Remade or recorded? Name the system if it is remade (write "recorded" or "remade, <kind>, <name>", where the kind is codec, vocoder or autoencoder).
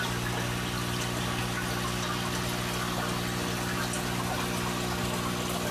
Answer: recorded